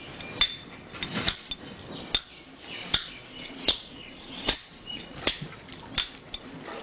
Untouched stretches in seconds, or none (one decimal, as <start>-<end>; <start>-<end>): 0.0-2.8; 5.5-6.8